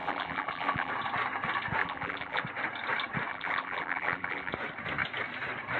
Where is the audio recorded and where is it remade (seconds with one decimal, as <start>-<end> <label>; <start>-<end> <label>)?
0.0-0.9 remade; 0.9-1.8 recorded; 1.8-2.4 remade; 2.4-3.3 recorded; 3.3-4.5 remade; 4.5-5.8 recorded